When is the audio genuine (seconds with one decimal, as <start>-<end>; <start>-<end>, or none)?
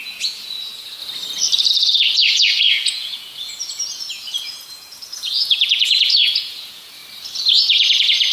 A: 1.0-1.7; 7.0-7.6